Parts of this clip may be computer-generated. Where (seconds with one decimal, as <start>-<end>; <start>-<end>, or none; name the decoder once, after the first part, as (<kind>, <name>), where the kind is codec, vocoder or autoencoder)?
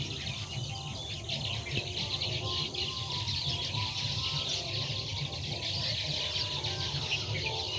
none